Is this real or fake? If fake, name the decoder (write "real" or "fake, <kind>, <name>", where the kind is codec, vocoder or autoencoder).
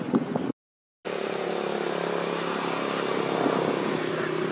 real